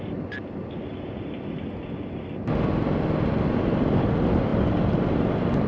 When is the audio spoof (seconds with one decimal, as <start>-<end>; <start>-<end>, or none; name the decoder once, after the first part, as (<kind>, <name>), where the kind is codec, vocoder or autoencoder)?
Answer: none